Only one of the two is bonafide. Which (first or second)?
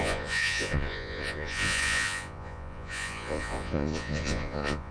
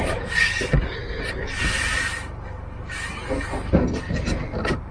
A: second